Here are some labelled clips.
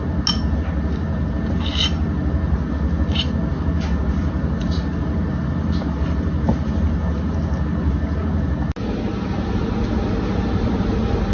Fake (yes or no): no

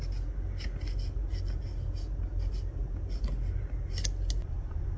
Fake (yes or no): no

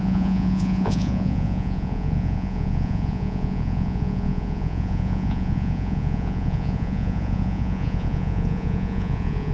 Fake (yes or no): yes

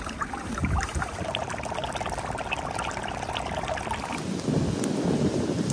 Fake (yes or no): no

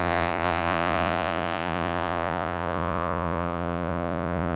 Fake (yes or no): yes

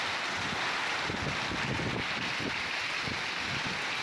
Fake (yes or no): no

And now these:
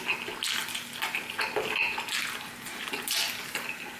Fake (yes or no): no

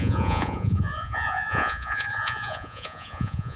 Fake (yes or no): yes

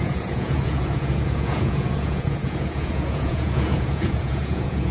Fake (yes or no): yes